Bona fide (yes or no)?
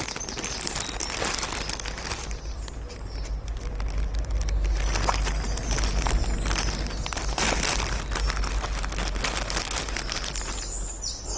yes